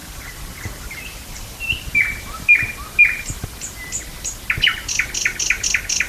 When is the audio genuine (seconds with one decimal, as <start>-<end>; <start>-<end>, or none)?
1.6-6.1